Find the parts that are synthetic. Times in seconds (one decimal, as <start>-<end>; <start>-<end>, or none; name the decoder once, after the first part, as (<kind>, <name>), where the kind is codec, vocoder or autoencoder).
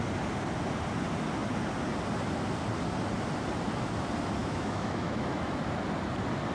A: 4.4-5.6 (autoencoder, DAC-VAE)